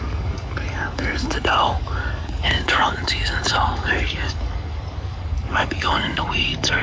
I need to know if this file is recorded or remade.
remade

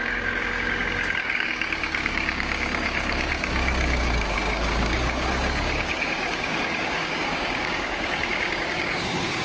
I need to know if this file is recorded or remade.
remade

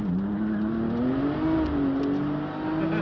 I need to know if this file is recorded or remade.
recorded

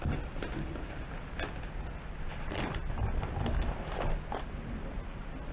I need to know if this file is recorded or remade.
recorded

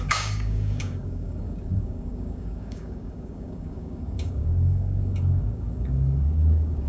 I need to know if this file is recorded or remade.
remade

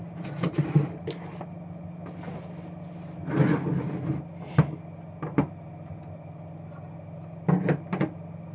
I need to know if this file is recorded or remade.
recorded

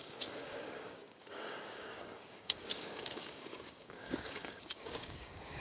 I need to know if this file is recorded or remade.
remade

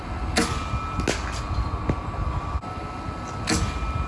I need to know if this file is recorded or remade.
recorded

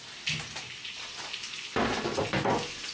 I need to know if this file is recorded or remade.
recorded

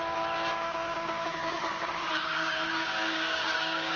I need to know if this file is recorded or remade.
remade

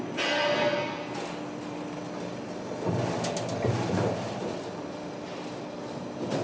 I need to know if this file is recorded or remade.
recorded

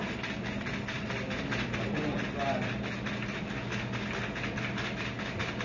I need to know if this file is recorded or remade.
recorded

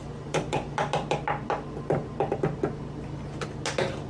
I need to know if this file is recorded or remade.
recorded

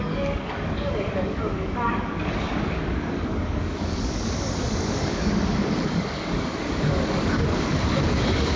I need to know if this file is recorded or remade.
remade